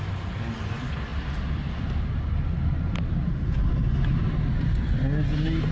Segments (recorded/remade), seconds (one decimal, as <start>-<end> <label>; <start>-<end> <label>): 0.0-5.7 recorded